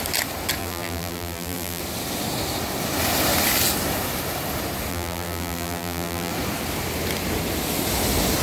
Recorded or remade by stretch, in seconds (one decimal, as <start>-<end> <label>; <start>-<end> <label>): 0.0-0.6 recorded; 0.6-1.8 remade; 1.8-4.9 recorded; 4.9-6.3 remade; 6.3-8.4 recorded